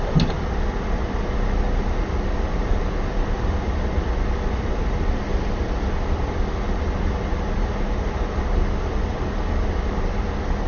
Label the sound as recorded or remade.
recorded